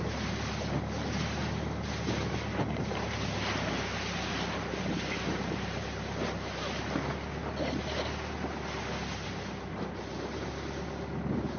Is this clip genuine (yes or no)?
yes